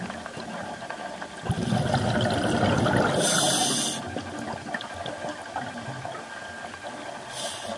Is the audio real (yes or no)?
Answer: yes